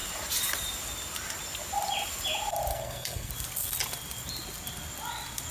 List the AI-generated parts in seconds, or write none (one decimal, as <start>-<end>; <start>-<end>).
2.7-3.3